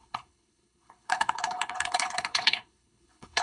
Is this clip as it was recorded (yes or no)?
no